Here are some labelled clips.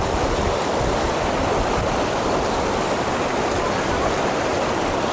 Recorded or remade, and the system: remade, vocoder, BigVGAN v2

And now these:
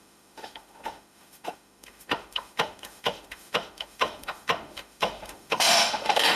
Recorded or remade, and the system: remade, autoencoder, DAC-VAE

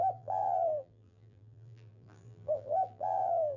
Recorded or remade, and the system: remade, vocoder, BigVGAN v2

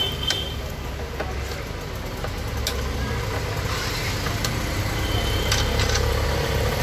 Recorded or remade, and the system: recorded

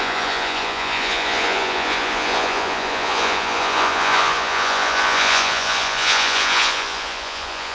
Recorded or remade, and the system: remade, vocoder, Vocos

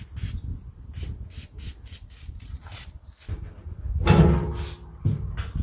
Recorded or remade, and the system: recorded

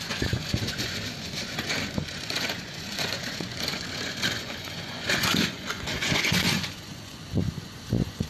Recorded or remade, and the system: remade, vocoder, Vocos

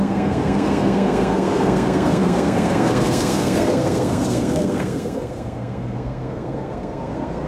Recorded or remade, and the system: remade, codec, SNAC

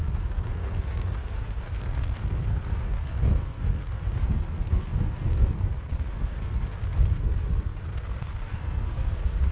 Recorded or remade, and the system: remade, codec, SNAC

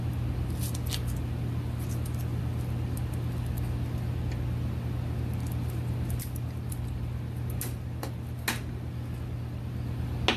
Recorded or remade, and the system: recorded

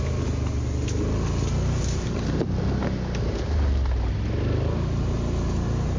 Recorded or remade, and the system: recorded